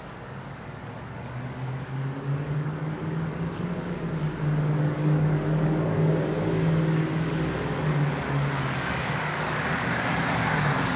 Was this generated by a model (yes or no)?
yes